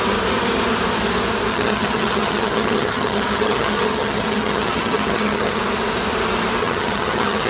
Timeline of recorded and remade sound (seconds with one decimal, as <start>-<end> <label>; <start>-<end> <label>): 0.0-1.5 recorded; 1.5-5.6 remade; 5.6-6.6 recorded; 6.6-7.5 remade